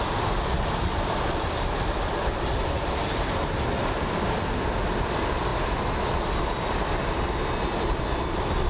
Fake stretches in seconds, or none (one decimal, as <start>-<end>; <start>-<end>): 0.0-5.5; 7.7-8.7